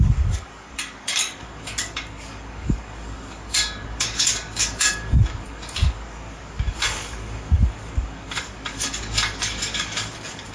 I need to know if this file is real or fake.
fake